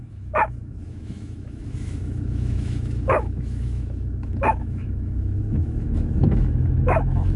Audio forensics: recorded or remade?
remade